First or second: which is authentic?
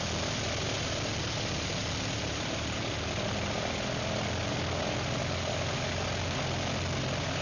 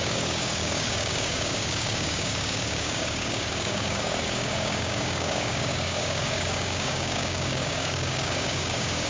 first